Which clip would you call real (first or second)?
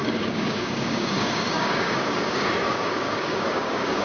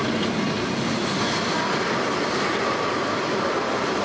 second